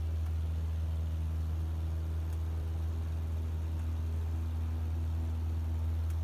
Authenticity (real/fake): real